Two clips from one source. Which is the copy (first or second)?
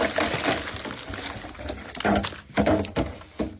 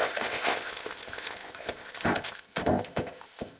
second